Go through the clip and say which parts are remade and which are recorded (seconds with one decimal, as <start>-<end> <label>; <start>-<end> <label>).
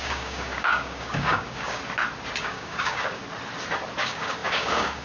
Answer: 0.0-1.8 remade; 1.8-2.4 recorded; 2.4-3.2 remade; 3.2-4.0 recorded; 4.0-5.0 remade